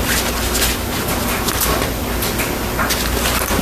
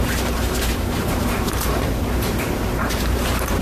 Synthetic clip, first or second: second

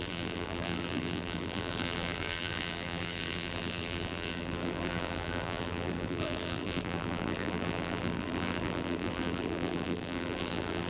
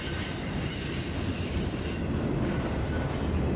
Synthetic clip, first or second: first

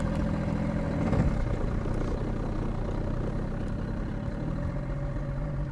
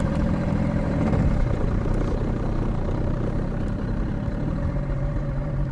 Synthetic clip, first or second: second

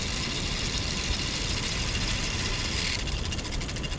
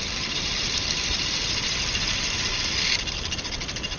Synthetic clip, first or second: second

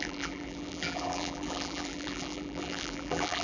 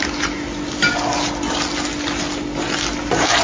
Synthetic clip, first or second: first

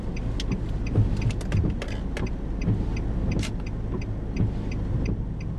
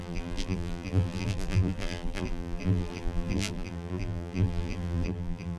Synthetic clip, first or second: second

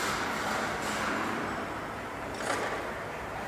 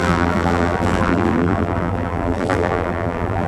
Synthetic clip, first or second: second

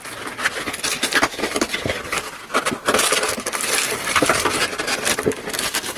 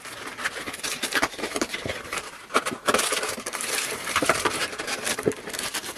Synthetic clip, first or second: second